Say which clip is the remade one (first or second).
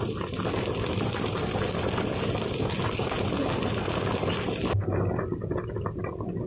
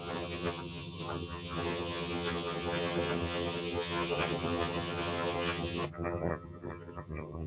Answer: second